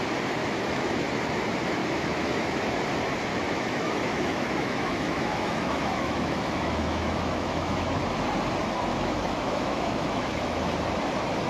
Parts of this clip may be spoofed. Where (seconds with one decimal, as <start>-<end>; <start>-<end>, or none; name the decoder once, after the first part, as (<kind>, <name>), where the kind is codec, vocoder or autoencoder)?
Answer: 0.4-1.1 (autoencoder, DAC-VAE); 1.8-2.8; 3.3-8.0; 8.9-10.7